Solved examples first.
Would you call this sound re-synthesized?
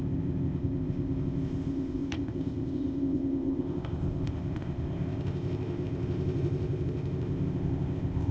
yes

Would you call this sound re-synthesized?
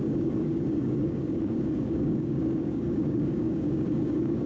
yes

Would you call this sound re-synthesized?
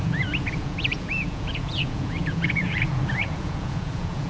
yes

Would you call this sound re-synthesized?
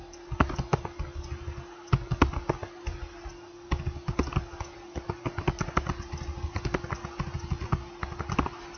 no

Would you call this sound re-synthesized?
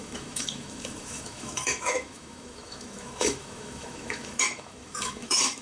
yes